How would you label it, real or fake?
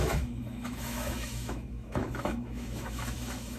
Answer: fake